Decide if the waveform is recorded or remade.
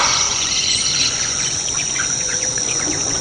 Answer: remade